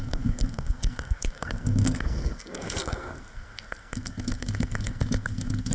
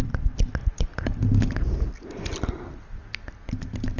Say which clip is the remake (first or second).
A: first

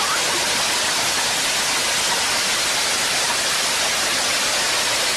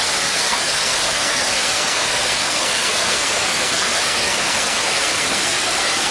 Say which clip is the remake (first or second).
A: second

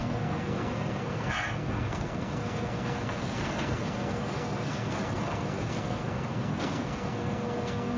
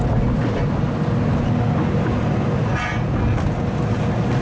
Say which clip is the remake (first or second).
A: first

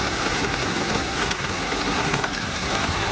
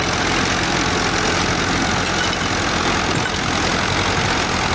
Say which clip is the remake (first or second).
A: first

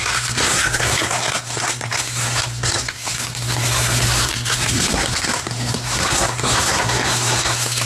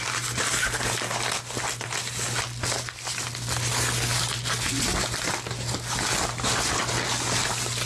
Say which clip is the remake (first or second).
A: first